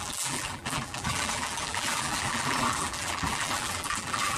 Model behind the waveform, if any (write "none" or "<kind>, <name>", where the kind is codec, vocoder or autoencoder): vocoder, BigVGAN v2